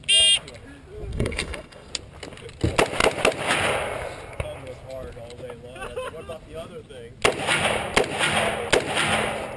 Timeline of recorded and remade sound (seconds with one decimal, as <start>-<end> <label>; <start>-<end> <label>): 0.0-1.1 recorded; 1.1-1.9 remade; 1.9-9.6 recorded